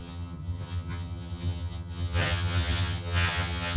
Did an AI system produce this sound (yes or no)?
yes